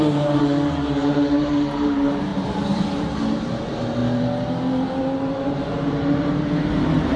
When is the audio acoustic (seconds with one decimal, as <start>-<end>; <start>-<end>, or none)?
4.0-5.0